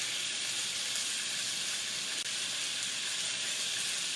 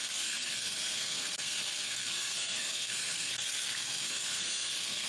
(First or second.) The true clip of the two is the first